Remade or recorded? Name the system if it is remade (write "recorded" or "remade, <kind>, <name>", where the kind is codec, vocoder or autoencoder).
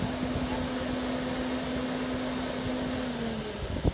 recorded